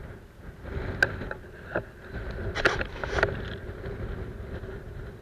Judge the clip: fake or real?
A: real